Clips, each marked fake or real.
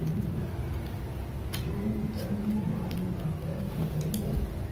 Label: real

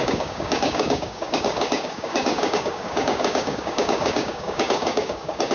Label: fake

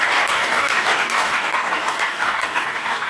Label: fake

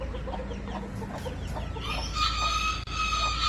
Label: real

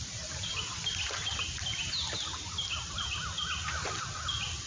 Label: real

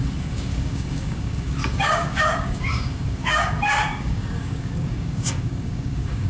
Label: fake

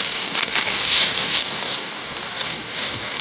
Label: fake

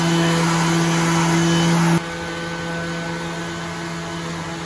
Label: real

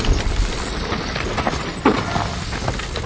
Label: real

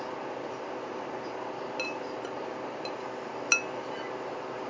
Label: real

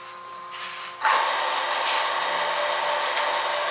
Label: real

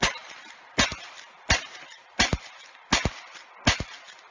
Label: real